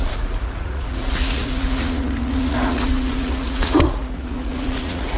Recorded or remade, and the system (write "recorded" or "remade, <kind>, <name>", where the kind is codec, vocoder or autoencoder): remade, vocoder, Vocos